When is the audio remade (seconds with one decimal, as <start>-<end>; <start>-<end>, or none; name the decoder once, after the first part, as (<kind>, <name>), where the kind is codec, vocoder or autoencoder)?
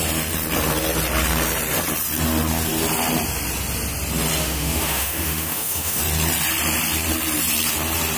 4.4-6.0 (autoencoder, DAC-VAE)